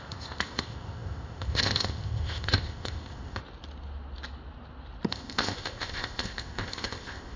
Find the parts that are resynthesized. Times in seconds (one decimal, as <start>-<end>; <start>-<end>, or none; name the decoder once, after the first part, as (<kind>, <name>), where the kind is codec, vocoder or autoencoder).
0.0-3.4 (codec, ZipCodec); 5.1-7.4